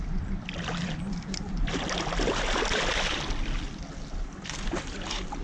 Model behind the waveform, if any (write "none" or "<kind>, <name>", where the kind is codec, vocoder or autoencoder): none